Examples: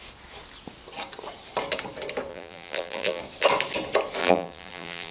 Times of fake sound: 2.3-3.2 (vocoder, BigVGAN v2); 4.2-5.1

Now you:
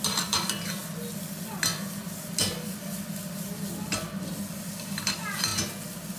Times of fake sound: 0.0-0.8 (vocoder, BigVGAN v2); 4.5-5.5

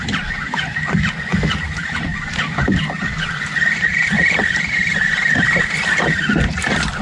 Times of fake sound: none

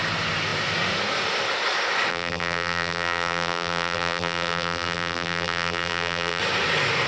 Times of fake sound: 2.1-6.4 (vocoder, BigVGAN v2)

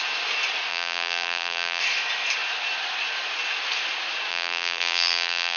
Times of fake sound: 0.7-1.8 (vocoder, BigVGAN v2); 4.3-5.6

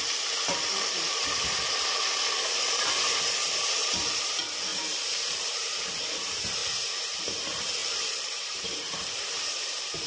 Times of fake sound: 0.0-10.1 (vocoder, BigVGAN v2)

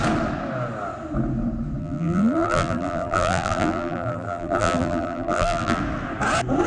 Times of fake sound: 1.8-5.8 (vocoder, BigVGAN v2)

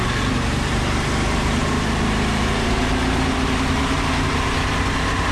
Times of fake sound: 0.0-5.3 (vocoder, BigVGAN v2)